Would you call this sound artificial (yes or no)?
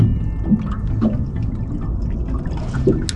no